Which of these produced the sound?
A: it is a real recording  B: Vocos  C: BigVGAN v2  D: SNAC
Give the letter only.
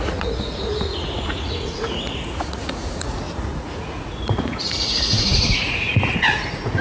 B